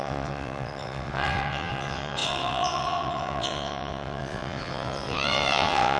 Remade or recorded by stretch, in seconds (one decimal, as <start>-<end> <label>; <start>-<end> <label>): 0.0-6.0 remade